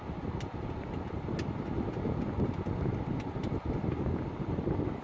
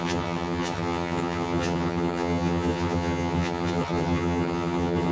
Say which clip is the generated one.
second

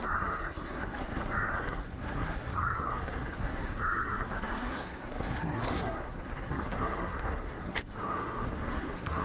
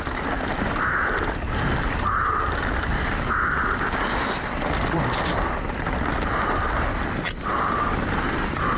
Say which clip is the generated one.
first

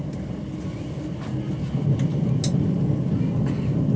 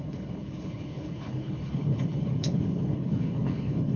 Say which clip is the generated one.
second